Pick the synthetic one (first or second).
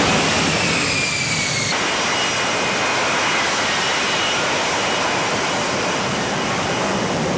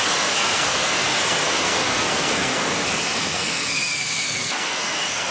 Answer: second